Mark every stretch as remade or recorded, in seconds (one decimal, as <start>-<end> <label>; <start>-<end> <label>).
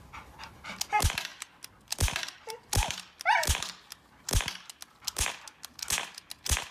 0.0-6.7 recorded